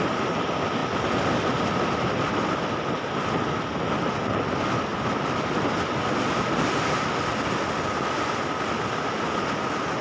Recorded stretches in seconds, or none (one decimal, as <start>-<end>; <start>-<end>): 0.0-10.0